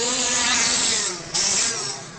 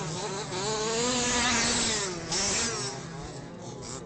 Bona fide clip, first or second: second